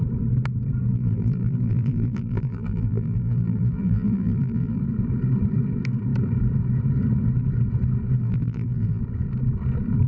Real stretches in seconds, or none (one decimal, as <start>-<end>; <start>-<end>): 0.0-0.9; 4.8-8.2; 9.0-10.1